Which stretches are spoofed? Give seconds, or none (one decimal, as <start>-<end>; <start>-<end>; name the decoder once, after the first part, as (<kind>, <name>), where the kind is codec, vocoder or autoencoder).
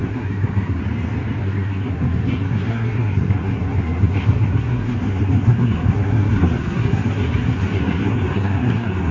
0.0-0.8 (codec, SNAC); 1.4-9.1